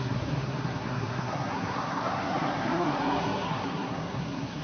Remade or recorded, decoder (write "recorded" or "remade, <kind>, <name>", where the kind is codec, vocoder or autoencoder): remade, codec, SNAC